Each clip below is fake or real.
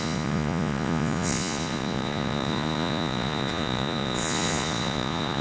fake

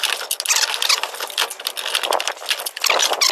real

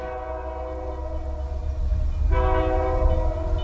real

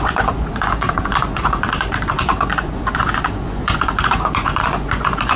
fake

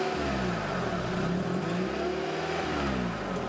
real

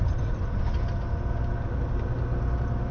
real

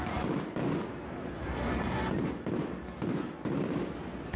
real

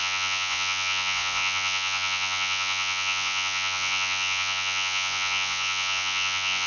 fake